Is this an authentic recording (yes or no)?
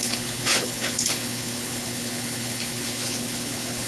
no